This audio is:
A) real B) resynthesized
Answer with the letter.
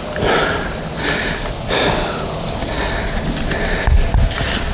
A